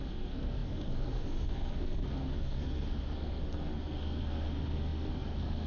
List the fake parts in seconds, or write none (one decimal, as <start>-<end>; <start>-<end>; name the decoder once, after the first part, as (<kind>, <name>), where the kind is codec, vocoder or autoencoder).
0.0-5.7 (codec, SNAC)